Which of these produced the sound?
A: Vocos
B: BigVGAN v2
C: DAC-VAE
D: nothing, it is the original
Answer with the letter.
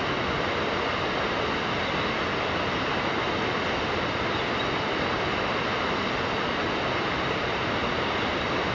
D